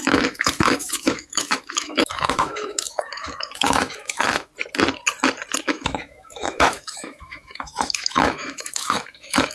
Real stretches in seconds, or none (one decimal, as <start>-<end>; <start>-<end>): 4.5-5.6